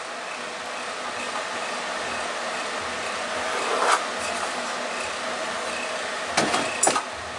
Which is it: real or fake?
real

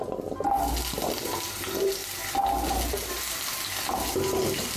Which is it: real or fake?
real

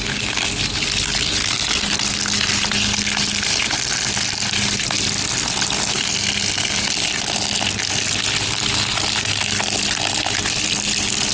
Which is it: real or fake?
real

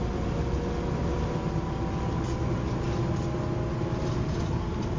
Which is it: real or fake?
real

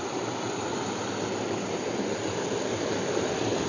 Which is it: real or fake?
real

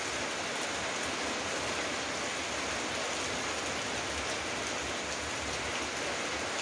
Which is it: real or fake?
real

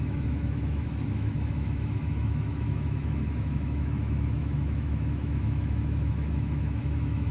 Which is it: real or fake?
fake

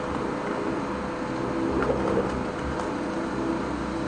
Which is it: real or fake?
real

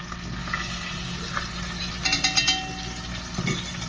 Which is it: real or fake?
real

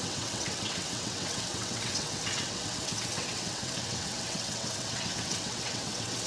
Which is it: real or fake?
fake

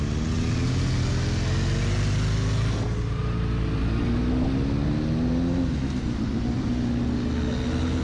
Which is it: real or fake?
real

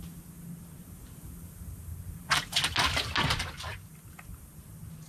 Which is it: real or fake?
real